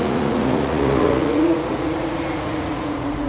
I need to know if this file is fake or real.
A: fake